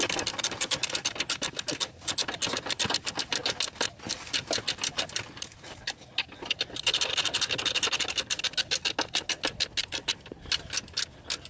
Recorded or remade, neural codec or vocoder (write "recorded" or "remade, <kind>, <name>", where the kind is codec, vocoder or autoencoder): recorded